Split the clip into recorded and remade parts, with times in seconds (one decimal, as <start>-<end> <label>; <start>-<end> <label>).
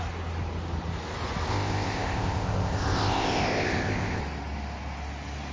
0.0-1.5 recorded; 1.5-4.2 remade; 4.2-5.5 recorded